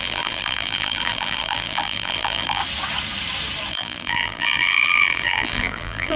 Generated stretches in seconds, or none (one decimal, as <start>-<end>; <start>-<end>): 0.0-2.6; 3.7-6.2